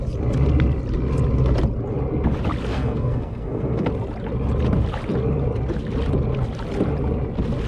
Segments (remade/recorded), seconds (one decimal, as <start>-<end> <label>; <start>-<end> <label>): 0.0-2.7 recorded; 2.7-3.9 remade; 3.9-7.7 recorded